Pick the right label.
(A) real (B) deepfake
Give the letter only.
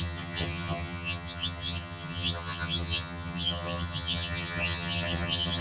B